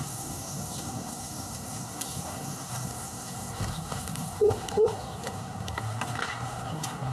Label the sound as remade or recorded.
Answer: remade